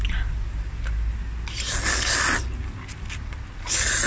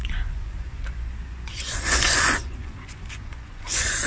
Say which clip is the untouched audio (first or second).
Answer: first